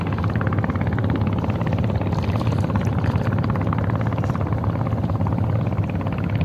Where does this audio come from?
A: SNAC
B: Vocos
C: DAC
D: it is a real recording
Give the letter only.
D